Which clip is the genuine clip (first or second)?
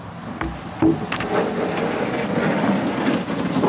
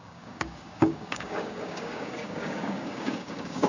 first